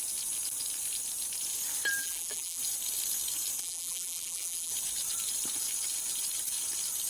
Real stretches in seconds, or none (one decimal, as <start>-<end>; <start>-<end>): 0.0-2.0; 2.6-3.6; 4.7-7.1